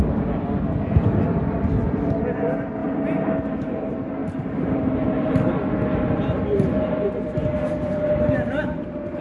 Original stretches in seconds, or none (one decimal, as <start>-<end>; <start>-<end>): 0.0-4.2; 4.9-9.2

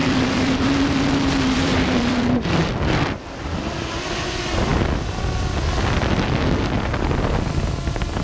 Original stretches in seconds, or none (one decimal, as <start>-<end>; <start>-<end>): 3.9-8.2

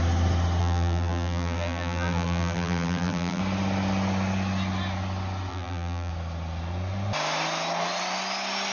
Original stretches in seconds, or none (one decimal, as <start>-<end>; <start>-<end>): 0.0-0.6; 3.4-5.5; 6.1-8.7

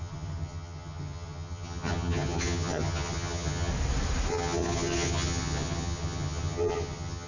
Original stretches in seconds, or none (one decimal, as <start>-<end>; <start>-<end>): 3.7-4.3

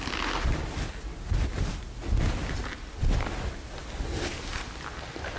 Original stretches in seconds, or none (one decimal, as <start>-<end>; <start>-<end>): 0.0-5.4

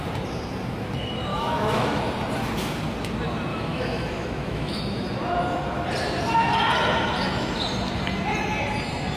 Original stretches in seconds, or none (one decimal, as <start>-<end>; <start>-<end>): 0.0-1.3; 2.0-3.5; 4.8-9.2

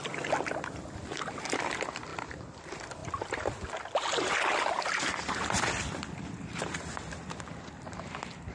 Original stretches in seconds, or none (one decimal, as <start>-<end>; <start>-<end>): none